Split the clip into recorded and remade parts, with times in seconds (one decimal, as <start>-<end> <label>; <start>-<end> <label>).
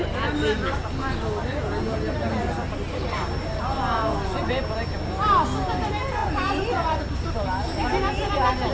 0.0-6.2 recorded; 6.2-7.0 remade; 7.0-8.7 recorded